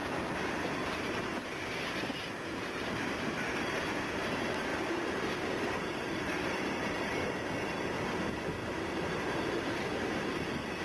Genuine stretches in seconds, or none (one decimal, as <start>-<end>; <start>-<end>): none